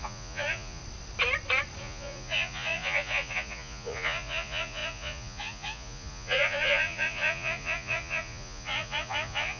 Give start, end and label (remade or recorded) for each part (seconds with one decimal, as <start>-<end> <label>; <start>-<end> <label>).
0.0-0.8 remade; 0.8-1.8 recorded; 1.8-9.6 remade